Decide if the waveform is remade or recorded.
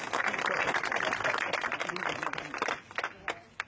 recorded